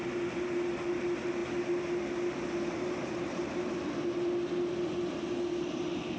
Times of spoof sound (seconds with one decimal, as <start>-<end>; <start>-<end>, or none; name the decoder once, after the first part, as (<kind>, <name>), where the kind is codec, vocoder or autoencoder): none